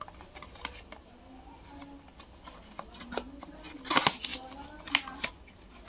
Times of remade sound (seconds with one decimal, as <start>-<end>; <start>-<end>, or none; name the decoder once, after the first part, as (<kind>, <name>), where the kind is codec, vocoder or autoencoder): none